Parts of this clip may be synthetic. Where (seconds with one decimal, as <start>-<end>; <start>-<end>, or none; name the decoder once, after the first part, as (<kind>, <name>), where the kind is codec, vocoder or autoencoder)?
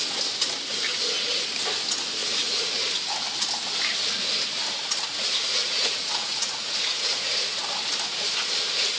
2.2-2.8 (vocoder, Vocos); 5.1-7.6